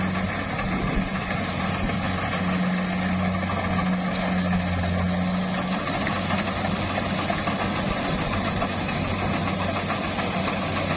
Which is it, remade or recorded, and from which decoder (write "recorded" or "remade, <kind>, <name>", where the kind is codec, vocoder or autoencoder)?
recorded